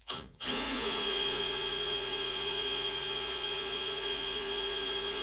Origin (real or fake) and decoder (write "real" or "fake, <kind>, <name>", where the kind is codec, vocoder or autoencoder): fake, vocoder, Vocos